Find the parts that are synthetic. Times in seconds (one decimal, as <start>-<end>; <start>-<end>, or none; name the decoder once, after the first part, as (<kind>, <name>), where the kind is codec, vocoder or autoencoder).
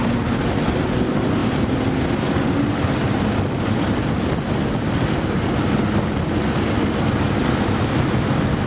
none